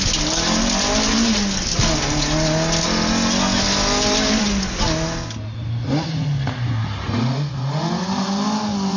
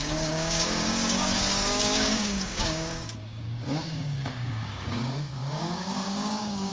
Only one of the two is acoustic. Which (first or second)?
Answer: first